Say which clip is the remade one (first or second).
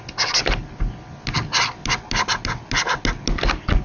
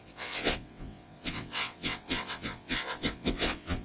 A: second